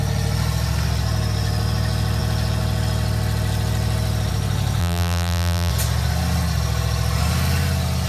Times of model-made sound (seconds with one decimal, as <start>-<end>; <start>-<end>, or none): 4.8-5.7